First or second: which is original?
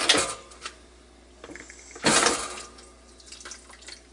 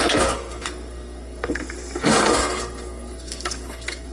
first